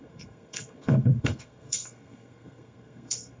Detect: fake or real fake